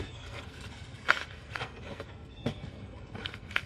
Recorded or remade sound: remade